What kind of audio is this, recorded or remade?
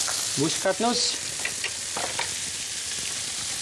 recorded